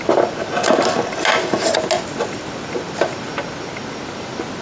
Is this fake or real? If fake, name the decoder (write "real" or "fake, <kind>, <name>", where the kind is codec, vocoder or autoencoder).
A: real